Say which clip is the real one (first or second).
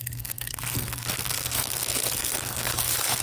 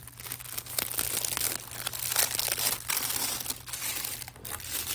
second